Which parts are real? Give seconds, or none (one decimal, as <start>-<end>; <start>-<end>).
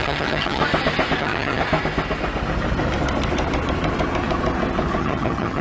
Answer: 0.6-1.2; 1.6-5.0